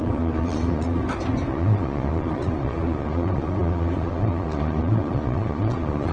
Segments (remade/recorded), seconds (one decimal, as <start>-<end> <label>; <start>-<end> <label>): 0.0-1.0 remade; 1.0-1.5 recorded; 1.5-6.1 remade